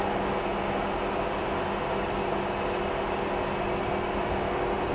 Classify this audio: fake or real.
real